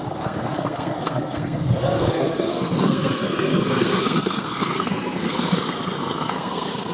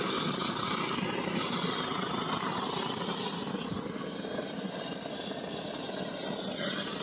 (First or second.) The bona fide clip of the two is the second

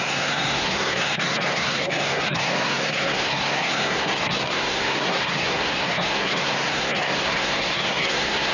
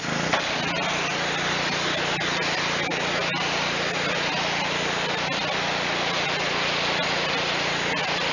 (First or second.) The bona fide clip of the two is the second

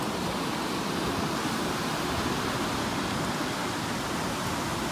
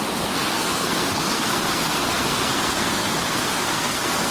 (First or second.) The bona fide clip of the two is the first